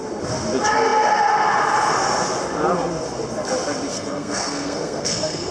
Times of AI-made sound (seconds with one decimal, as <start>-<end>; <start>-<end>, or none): 3.9-5.5